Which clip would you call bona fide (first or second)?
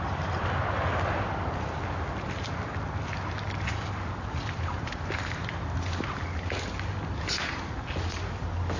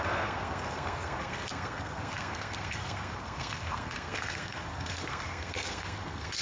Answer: first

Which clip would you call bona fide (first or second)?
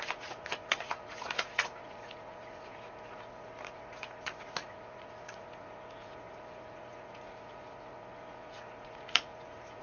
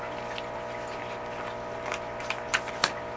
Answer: second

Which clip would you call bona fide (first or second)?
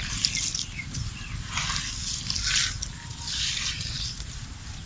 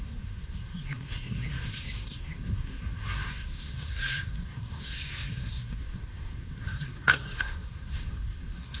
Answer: first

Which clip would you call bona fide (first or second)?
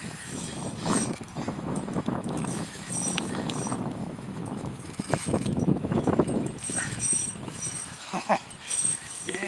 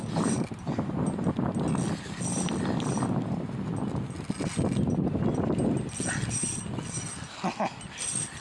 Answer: second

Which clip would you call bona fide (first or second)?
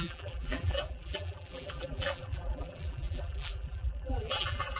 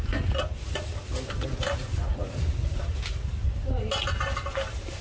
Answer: second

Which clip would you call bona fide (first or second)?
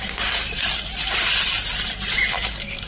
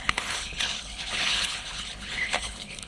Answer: first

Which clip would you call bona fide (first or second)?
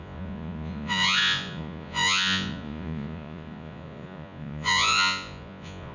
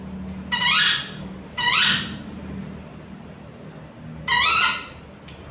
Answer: second